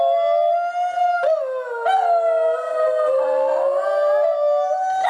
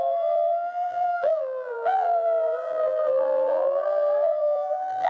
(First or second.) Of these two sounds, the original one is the first